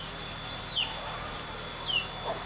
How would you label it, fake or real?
real